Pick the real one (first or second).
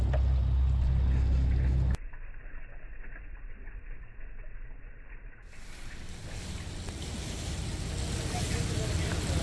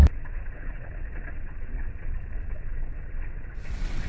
first